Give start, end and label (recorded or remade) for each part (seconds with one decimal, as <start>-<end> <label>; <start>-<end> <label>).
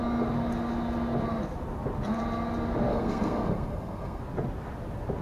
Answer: 0.0-2.9 recorded; 2.9-4.2 remade; 4.2-5.2 recorded